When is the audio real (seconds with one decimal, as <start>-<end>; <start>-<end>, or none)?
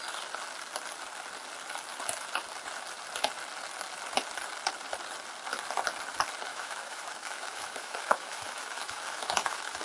0.0-6.5